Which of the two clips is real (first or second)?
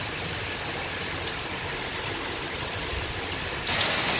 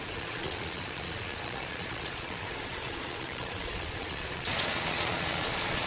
first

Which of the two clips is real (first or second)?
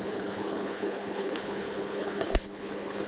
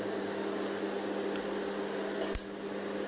second